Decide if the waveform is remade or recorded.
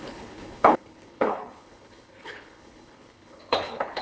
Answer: remade